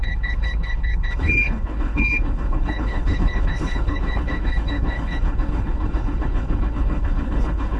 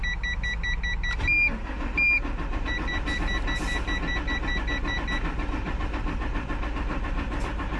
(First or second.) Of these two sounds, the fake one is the first